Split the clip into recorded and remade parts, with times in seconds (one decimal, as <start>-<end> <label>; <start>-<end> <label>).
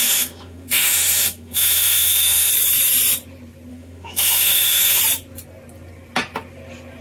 0.0-2.5 remade; 2.5-3.7 recorded; 3.7-5.0 remade; 5.0-7.0 recorded